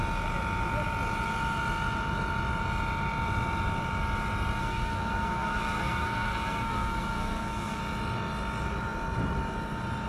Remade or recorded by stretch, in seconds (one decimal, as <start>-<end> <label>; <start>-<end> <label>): 0.0-4.6 recorded; 4.6-7.8 remade; 7.8-10.1 recorded